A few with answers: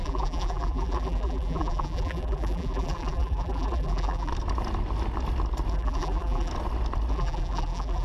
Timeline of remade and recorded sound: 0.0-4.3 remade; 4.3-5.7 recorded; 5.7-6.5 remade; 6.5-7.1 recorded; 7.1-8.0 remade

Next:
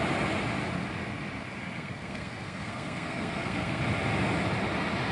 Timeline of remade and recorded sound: 0.0-1.6 recorded; 1.6-3.8 remade; 3.8-5.1 recorded

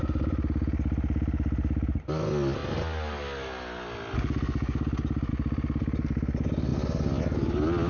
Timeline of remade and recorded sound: 0.0-7.9 recorded

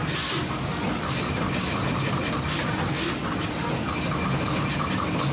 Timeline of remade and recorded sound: 0.0-0.7 recorded; 0.7-3.9 remade; 3.9-5.3 recorded

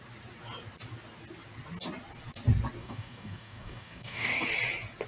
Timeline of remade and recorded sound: 0.0-2.8 recorded; 2.8-4.4 remade; 4.4-5.1 recorded